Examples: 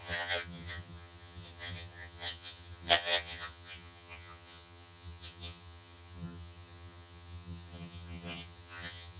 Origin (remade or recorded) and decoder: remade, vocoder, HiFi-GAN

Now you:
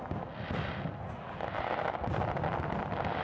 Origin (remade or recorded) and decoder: recorded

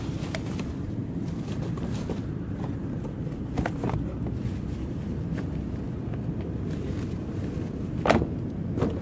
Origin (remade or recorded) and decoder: recorded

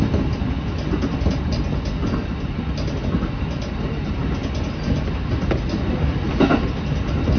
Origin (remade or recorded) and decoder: recorded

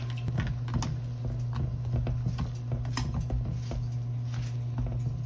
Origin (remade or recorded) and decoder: recorded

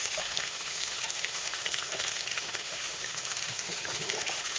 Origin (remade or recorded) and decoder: remade, autoencoder, DAC-VAE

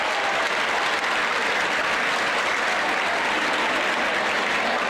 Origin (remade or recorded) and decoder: recorded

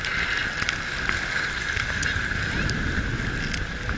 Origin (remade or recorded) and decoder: recorded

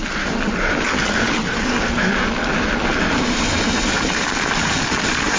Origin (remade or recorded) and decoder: recorded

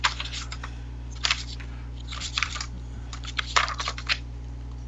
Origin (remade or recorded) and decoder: remade, vocoder, BigVGAN v2